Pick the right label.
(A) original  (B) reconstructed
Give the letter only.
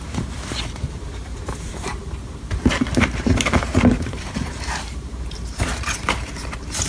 B